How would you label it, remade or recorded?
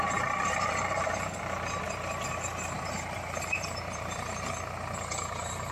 remade